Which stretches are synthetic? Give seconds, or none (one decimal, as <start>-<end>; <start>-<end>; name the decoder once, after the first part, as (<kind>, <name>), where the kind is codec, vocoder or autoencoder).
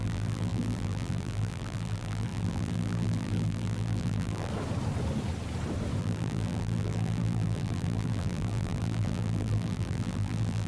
0.0-4.5 (vocoder, BigVGAN v2); 6.0-10.7